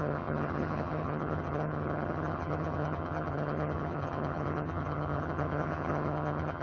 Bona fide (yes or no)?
no